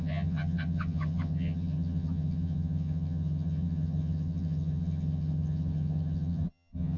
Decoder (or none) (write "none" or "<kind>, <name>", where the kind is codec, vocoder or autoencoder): vocoder, HiFi-GAN